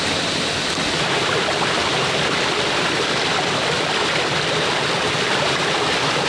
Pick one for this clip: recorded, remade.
recorded